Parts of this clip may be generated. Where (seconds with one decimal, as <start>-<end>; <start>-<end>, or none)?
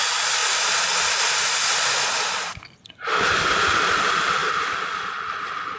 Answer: none